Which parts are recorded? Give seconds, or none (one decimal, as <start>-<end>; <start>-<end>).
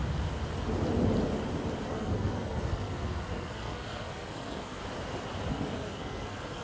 0.0-1.9; 4.8-5.5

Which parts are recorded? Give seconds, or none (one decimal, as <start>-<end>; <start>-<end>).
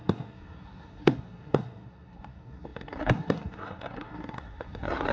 none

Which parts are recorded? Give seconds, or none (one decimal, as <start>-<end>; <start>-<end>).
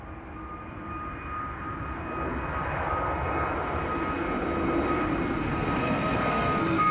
0.0-5.5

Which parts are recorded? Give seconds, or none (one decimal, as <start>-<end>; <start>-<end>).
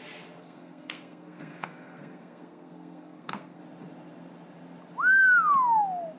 0.0-0.4; 3.6-6.2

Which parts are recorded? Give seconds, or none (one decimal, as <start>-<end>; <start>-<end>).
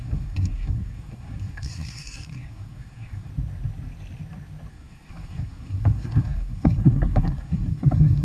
3.3-4.7